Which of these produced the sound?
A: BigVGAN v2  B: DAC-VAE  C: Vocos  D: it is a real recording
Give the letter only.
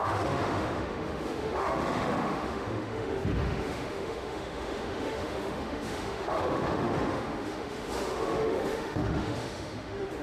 B